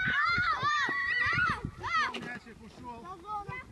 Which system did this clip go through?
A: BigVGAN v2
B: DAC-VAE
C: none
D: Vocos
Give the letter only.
C